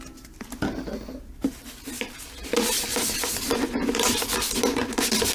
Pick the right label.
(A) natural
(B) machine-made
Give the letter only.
A